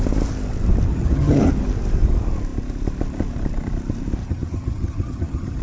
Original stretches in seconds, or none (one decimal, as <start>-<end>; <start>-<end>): 0.0-0.9; 1.5-4.2